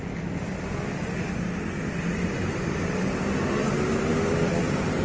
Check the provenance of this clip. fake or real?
real